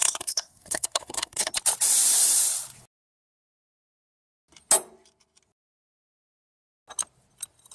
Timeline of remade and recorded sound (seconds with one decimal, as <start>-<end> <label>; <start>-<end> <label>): 0.0-1.5 remade; 1.5-7.7 recorded